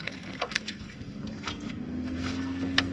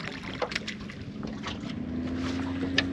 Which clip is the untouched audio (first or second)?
second